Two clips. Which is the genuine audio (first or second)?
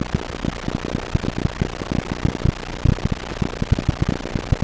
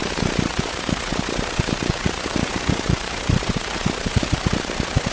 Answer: first